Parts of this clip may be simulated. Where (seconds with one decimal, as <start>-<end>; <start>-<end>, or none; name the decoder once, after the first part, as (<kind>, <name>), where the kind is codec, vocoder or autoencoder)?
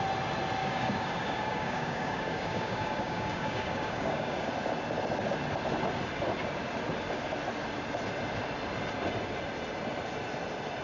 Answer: 0.6-4.5 (codec, DAC)